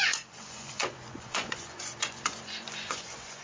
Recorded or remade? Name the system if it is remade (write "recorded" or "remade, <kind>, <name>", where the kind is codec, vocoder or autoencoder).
remade, vocoder, Vocos